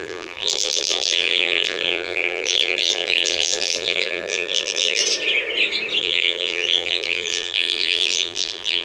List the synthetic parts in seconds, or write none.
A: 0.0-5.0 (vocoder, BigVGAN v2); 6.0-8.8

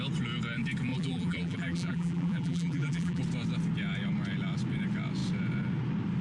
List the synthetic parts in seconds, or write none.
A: 0.9-3.2 (vocoder, BigVGAN v2)

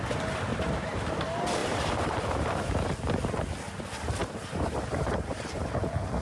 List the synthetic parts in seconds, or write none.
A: 0.5-1.1 (vocoder, BigVGAN v2); 1.6-2.7; 4.2-5.8

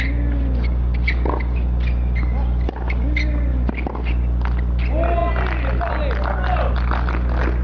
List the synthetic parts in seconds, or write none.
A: none

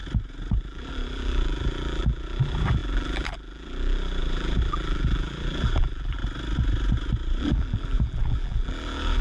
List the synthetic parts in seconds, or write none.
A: 0.6-6.2 (vocoder, BigVGAN v2); 7.4-9.2